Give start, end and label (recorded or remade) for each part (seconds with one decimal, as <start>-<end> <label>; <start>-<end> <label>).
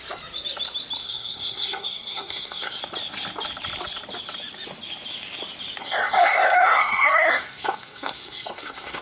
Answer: 0.0-1.0 recorded; 1.0-2.8 remade; 2.8-5.8 recorded; 5.8-9.0 remade